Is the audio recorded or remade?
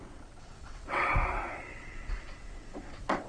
remade